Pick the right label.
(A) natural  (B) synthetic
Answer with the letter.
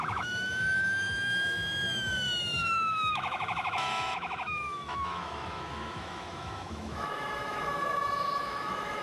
B